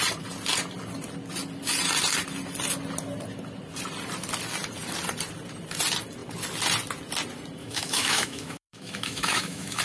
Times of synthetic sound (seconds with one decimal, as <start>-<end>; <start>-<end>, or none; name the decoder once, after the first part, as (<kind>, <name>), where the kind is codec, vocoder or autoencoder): 7.6-9.8 (autoencoder, DAC-VAE)